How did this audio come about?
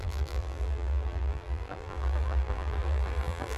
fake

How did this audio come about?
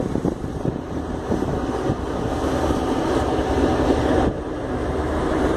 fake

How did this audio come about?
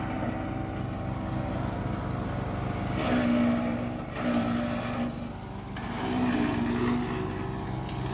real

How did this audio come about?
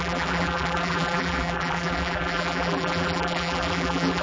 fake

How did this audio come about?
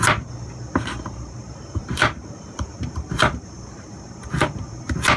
fake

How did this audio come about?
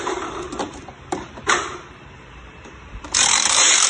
fake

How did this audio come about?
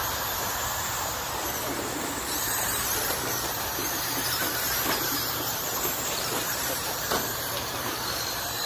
fake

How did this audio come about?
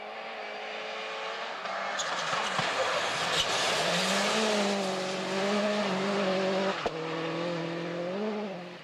real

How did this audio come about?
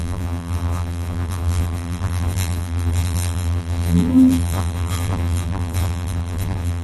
fake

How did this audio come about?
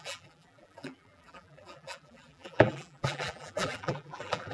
fake